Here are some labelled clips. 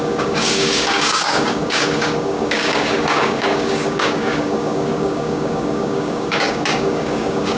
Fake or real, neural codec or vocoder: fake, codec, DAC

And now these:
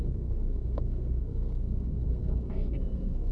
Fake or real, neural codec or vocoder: fake, codec, SNAC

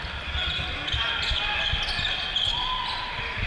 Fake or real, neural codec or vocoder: real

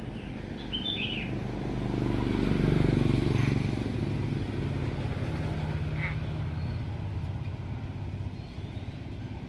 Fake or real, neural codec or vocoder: real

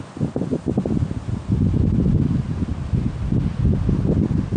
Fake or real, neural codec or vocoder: real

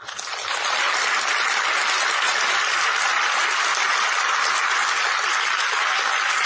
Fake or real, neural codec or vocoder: real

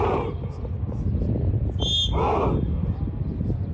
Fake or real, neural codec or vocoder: real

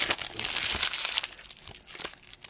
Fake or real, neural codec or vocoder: real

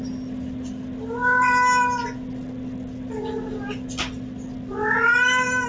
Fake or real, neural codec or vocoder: real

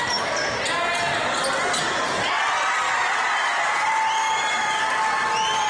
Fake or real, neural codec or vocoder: real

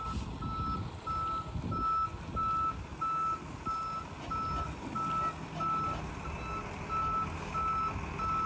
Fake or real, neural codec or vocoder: real